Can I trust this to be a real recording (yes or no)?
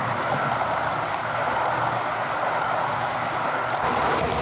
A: yes